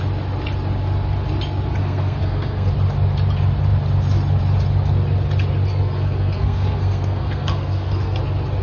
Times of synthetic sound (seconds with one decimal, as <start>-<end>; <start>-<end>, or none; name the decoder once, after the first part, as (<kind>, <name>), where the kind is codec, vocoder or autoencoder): 1.8-2.7 (codec, SNAC); 5.7-8.2

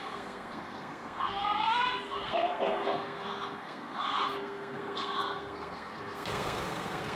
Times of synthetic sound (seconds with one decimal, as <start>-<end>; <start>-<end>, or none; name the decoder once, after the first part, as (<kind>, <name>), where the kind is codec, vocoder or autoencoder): 0.0-7.2 (codec, SNAC)